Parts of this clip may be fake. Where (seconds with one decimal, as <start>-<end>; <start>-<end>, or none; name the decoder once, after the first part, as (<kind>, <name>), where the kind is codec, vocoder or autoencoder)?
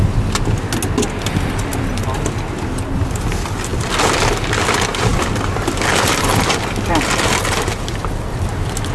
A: 5.1-8.9 (vocoder, BigVGAN v2)